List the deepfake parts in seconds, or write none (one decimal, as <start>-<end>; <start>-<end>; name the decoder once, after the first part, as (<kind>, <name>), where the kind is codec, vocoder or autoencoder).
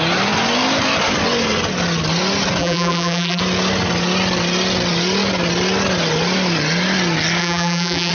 2.6-3.4 (vocoder, BigVGAN v2); 7.4-8.1